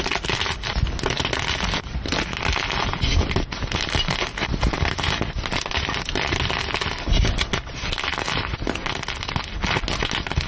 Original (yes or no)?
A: yes